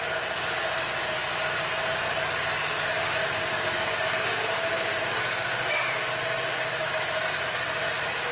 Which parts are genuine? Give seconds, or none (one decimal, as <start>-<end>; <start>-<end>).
0.0-2.6; 6.9-8.3